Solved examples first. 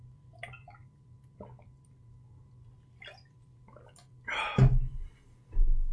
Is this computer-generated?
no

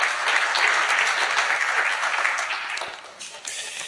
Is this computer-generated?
no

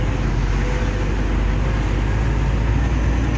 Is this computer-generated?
no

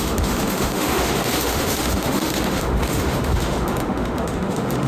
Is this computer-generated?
yes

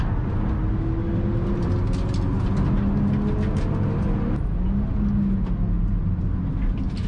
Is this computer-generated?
no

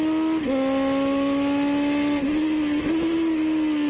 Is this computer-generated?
no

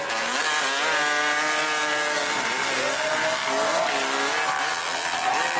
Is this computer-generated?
no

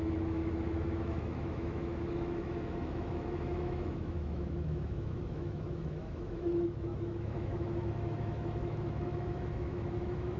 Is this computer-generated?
yes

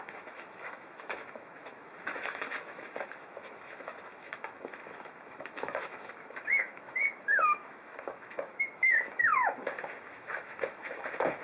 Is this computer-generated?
yes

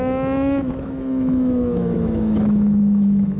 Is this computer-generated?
yes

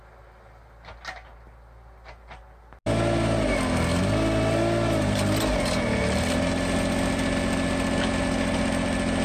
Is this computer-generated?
no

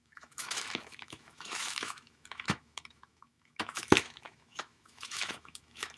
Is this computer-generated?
yes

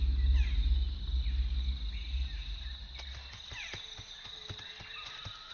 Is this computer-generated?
no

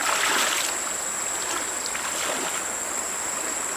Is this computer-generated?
no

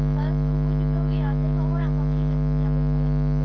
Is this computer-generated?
yes